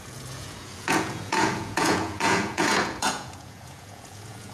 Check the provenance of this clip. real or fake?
fake